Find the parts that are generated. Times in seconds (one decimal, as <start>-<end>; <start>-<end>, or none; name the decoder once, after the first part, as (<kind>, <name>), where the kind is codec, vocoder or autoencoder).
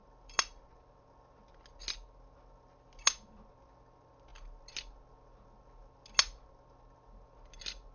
none